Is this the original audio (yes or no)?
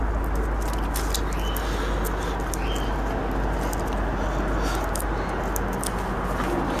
yes